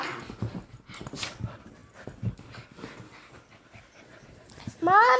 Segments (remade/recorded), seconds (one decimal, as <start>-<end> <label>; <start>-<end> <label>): 0.0-5.2 recorded